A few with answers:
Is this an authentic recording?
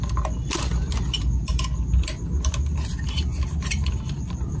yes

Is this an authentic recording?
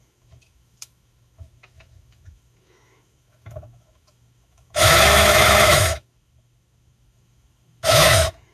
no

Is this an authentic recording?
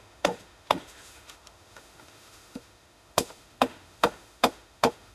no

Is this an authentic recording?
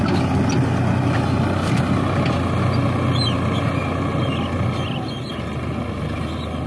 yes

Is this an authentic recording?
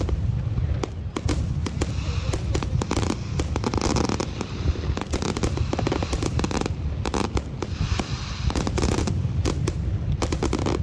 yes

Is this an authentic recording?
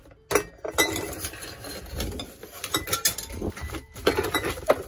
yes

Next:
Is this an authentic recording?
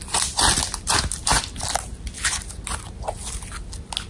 yes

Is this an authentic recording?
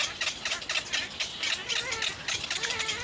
yes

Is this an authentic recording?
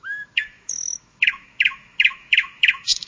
no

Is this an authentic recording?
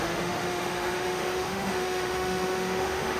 no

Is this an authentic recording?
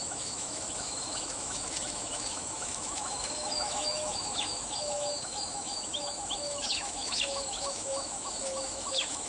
no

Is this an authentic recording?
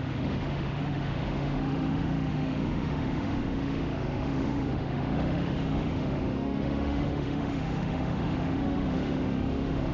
no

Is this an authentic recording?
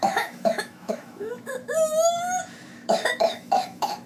no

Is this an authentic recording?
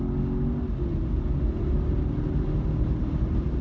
yes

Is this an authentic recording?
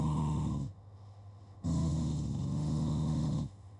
no